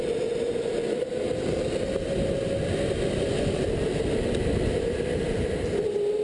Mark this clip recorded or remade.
recorded